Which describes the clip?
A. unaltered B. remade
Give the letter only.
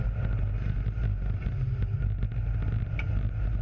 A